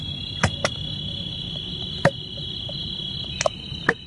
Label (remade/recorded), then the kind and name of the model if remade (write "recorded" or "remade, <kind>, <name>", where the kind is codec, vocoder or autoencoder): recorded